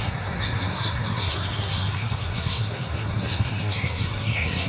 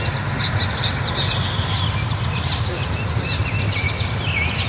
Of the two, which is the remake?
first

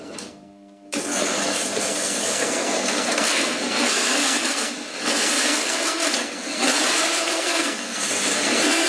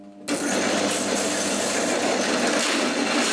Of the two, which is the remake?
first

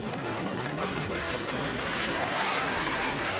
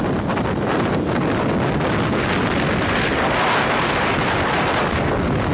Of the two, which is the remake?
first